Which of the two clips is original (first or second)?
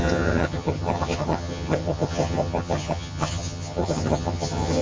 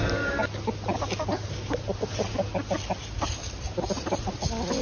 second